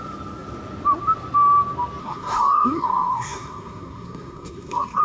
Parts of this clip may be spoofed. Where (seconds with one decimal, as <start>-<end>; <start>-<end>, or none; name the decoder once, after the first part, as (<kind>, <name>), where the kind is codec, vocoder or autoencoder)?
2.0-5.0 (codec, SNAC)